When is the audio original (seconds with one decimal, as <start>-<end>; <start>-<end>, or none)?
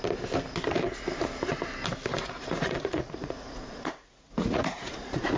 0.0-2.1